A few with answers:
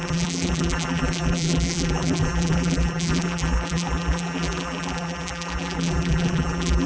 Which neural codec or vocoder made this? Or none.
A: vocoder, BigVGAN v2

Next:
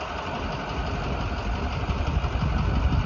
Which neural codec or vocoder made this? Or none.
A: none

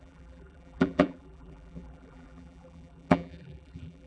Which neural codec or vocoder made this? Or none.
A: vocoder, BigVGAN v2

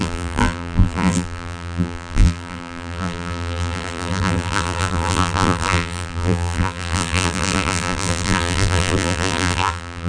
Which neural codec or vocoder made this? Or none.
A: vocoder, BigVGAN v2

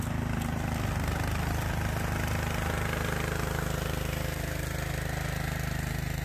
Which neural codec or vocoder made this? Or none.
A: none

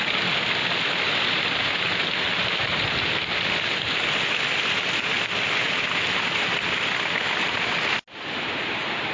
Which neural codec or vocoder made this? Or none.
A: none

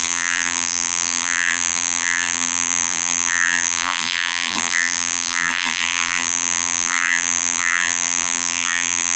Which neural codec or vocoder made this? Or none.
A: vocoder, BigVGAN v2